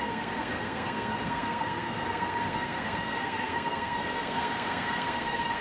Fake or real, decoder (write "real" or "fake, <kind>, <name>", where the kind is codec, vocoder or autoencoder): fake, codec, SNAC